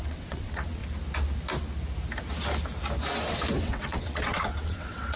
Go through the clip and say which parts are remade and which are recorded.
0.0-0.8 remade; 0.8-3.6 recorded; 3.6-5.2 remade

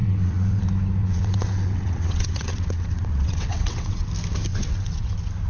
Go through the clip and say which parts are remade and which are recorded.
0.0-0.6 remade; 0.6-1.0 recorded; 1.0-4.1 remade; 4.1-4.5 recorded; 4.5-5.1 remade; 5.1-5.5 recorded

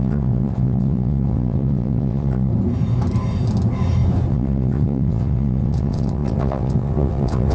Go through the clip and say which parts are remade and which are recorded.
0.0-2.5 remade; 2.5-4.3 recorded; 4.3-7.5 remade

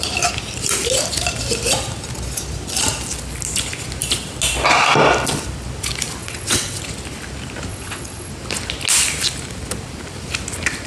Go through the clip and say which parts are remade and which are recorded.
0.0-6.2 recorded; 6.2-6.8 remade; 6.8-7.7 recorded; 7.7-8.3 remade; 8.3-10.9 recorded

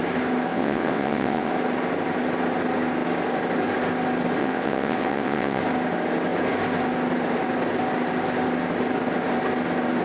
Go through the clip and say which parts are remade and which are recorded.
0.0-0.5 recorded; 0.5-1.5 remade; 1.5-4.4 recorded; 4.4-5.6 remade; 5.6-10.0 recorded

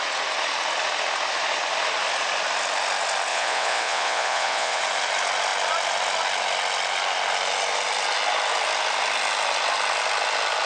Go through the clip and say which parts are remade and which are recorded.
0.0-3.3 recorded; 3.3-4.8 remade; 4.8-10.7 recorded

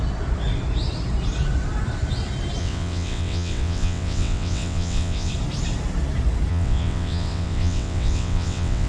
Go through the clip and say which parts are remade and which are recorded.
0.0-2.6 recorded; 2.6-5.3 remade; 5.3-6.5 recorded; 6.5-8.9 remade

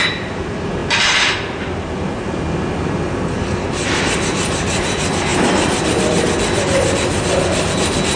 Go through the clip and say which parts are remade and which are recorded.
0.0-8.2 recorded